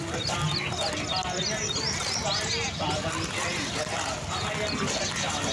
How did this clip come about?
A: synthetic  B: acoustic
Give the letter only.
B